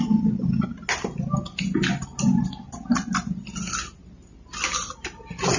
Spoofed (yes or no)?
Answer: no